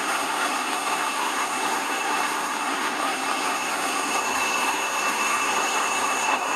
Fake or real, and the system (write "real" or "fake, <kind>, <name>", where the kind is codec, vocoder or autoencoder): fake, codec, SNAC